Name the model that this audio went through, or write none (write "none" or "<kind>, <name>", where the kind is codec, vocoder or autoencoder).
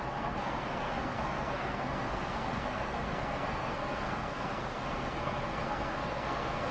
codec, SNAC